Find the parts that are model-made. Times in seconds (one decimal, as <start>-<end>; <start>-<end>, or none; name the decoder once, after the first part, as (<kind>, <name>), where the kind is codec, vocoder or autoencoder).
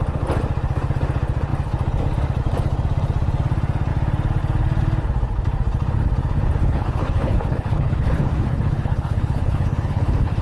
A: 6.6-10.4 (codec, HILCodec)